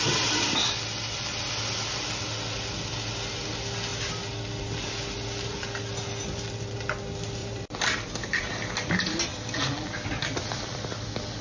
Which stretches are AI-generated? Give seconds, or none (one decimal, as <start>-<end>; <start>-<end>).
7.4-8.1